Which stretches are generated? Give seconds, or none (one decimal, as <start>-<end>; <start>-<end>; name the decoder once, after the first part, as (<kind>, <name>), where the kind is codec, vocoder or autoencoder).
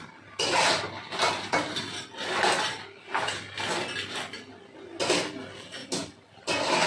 5.8-6.4 (vocoder, BigVGAN v2)